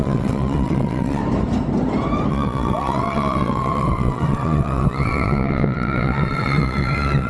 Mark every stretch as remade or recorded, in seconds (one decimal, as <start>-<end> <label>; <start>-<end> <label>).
0.0-1.2 remade; 1.2-2.3 recorded; 2.3-7.3 remade